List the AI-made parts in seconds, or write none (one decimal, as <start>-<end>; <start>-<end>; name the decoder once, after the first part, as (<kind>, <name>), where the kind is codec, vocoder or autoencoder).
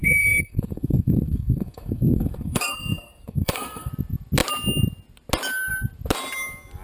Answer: 0.0-3.9 (codec, SNAC)